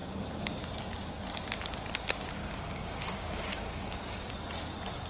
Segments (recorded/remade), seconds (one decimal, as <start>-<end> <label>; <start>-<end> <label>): 0.0-0.6 remade; 0.6-2.4 recorded; 2.4-4.3 remade; 4.3-5.1 recorded